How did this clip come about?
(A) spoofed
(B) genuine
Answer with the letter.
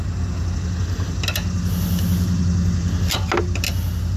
B